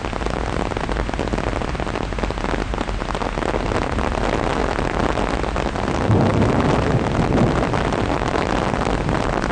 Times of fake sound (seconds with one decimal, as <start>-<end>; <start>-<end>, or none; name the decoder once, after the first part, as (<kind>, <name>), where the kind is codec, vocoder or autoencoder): none